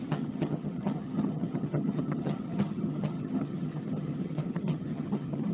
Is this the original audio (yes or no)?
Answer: no